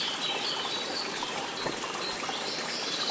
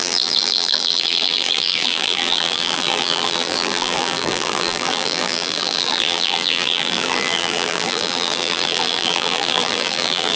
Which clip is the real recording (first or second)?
first